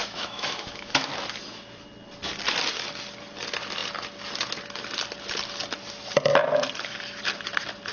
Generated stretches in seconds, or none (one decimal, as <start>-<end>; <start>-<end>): 0.0-1.1